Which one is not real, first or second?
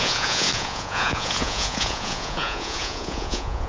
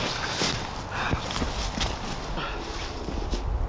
first